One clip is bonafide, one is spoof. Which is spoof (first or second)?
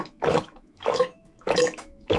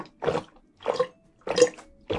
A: first